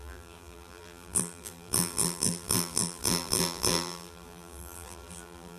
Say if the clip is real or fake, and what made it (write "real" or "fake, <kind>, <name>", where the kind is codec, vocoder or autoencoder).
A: fake, vocoder, BigVGAN v2